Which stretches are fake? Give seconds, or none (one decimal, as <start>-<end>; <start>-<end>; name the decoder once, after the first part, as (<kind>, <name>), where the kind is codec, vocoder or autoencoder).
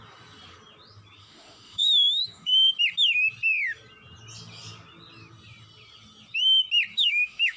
1.2-2.7 (autoencoder, DAC-VAE); 6.9-7.6